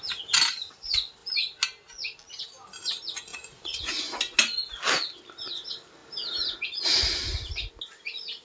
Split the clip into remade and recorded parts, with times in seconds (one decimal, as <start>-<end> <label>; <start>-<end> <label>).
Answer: 0.0-3.3 recorded; 3.3-4.0 remade; 4.0-8.4 recorded